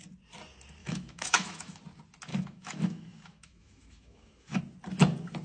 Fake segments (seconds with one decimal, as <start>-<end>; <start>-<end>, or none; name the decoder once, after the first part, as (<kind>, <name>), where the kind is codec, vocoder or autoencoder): 0.8-1.8 (autoencoder, DAC-VAE); 2.3-4.6